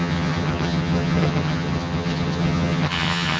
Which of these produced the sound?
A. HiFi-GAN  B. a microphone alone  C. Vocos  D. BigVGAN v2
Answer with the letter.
A